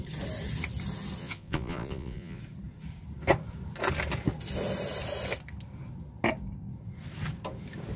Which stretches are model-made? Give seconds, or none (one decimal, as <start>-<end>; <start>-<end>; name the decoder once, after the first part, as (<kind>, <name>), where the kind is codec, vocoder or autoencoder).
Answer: 1.2-2.4 (vocoder, Vocos)